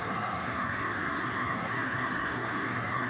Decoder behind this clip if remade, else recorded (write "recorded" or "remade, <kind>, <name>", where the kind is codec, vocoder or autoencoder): remade, codec, SNAC